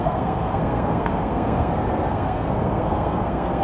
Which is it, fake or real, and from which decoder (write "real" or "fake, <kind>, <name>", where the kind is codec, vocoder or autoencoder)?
fake, codec, SNAC